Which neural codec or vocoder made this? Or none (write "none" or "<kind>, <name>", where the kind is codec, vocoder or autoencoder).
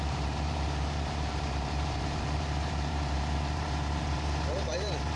vocoder, BigVGAN v2